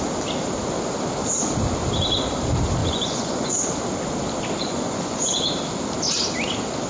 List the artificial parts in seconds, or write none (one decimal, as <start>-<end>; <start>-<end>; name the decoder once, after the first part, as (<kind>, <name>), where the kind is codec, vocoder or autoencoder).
2.8-3.5 (vocoder, Vocos); 4.6-5.3